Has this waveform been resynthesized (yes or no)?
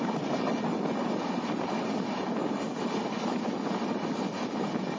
no